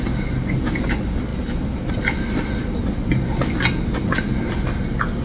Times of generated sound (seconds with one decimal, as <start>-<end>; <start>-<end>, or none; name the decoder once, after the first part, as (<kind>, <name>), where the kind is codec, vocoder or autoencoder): none

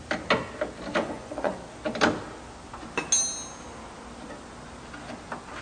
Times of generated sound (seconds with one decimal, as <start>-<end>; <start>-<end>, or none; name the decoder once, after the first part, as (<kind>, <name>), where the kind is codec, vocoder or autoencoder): 1.0-1.5 (vocoder, Vocos)

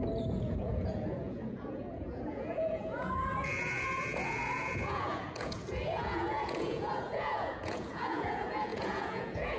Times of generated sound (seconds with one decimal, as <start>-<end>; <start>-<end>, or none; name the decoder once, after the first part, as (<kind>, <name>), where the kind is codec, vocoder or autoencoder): 0.0-9.6 (vocoder, Vocos)

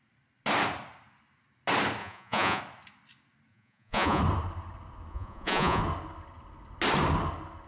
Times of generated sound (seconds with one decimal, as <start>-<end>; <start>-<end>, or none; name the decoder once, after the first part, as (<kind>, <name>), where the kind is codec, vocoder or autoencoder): 2.0-2.6 (vocoder, Vocos); 3.5-4.2; 5.1-5.8

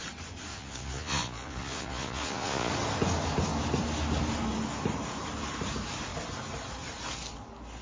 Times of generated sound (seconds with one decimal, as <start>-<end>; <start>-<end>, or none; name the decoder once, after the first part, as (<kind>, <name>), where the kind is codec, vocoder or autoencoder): 0.5-2.7 (vocoder, Vocos)